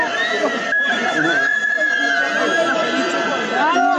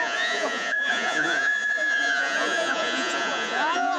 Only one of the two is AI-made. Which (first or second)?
second